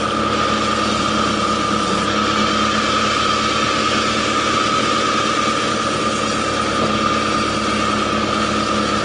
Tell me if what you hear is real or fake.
real